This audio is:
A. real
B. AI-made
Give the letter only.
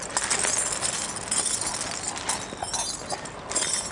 A